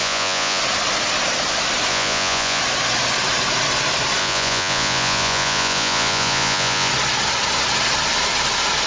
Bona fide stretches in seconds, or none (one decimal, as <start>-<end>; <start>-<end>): 0.6-1.9; 2.6-4.2; 6.9-8.9